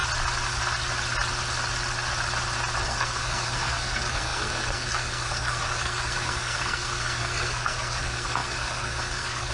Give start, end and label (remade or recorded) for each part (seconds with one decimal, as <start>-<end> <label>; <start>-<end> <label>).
0.0-2.8 recorded; 2.8-9.5 remade